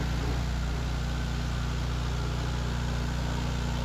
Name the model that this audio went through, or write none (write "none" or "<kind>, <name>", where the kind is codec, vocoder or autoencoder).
none